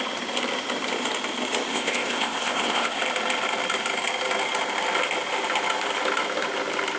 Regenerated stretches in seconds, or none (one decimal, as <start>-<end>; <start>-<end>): 1.7-3.0